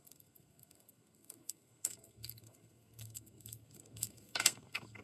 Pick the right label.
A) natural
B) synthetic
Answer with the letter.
B